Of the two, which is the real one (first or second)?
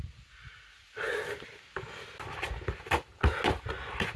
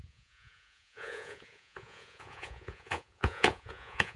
first